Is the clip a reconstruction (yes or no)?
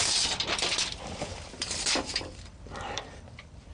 yes